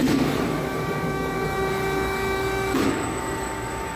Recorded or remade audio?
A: remade